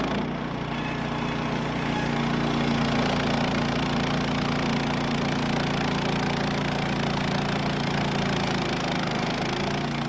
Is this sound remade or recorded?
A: recorded